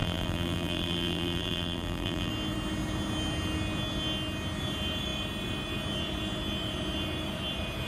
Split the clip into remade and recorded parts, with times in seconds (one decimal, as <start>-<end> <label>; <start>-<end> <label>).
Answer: 0.0-2.3 remade; 2.3-7.9 recorded